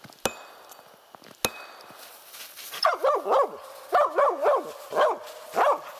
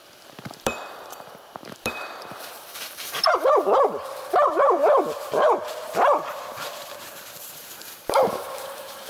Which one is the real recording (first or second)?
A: first